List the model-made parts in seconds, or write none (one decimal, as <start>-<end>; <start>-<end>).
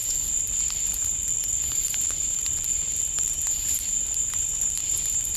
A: 0.9-5.4